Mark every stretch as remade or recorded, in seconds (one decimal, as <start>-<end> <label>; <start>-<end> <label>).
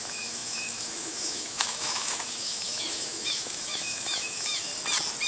0.0-4.7 remade; 4.7-5.3 recorded